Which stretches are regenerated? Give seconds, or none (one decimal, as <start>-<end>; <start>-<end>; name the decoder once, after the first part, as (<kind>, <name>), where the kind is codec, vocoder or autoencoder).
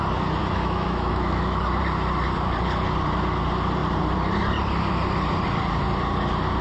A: 0.4-1.6 (autoencoder, DAC-VAE)